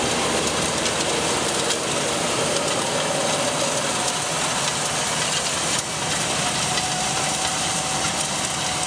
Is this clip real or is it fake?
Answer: real